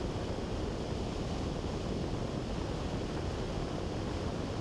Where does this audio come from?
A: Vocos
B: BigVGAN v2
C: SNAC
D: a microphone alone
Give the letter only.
D